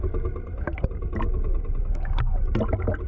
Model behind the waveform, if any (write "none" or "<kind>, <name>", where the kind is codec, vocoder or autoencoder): none